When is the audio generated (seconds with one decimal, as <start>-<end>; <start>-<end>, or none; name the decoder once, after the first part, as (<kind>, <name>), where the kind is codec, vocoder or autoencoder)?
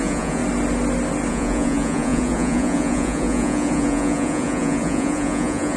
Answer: 0.0-0.4 (vocoder, Vocos); 1.3-5.8